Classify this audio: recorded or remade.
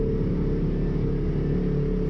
recorded